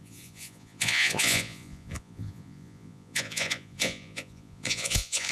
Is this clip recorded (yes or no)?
no